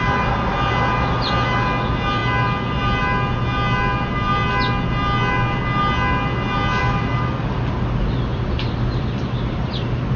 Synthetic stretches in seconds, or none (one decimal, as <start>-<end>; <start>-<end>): 8.3-9.1